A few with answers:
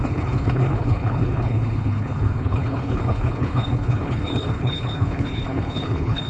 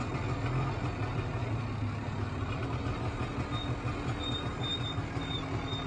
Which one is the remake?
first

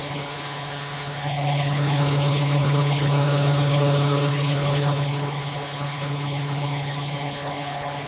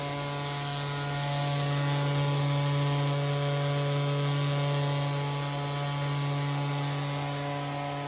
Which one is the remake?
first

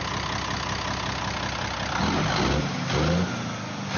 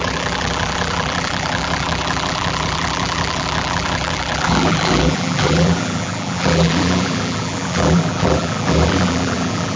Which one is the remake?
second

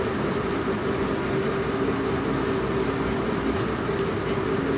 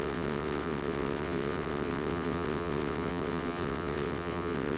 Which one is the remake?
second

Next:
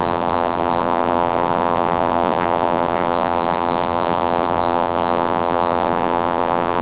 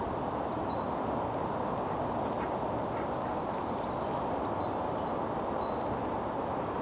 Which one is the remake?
first